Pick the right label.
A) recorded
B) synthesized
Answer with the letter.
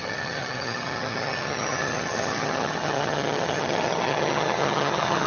B